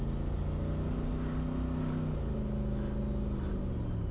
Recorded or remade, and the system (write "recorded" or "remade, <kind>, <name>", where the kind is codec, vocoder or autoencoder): recorded